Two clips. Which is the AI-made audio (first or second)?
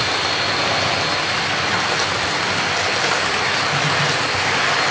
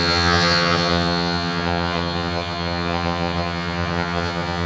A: second